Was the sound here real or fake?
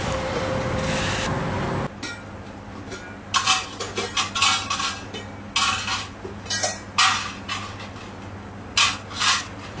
real